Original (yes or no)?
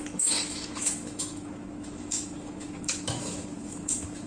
no